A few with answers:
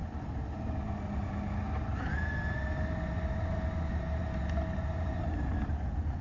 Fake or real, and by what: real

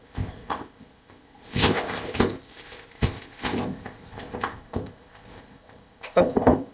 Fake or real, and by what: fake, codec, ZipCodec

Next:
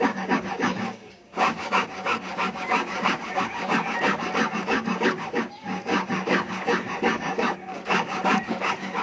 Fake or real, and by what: fake, codec, DAC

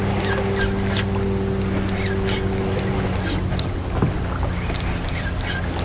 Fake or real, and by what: real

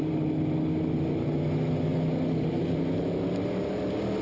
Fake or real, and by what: real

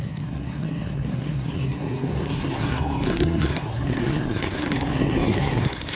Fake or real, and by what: fake, codec, SNAC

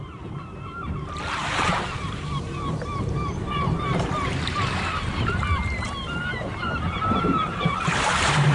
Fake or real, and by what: fake, vocoder, BigVGAN v2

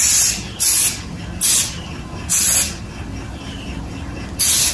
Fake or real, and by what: real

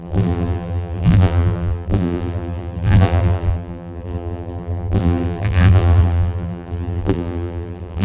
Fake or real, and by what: fake, vocoder, BigVGAN v2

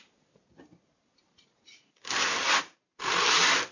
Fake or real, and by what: real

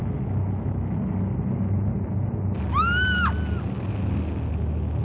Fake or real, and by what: real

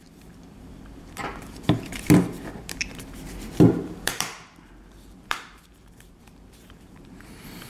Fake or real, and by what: fake, vocoder, BigVGAN v2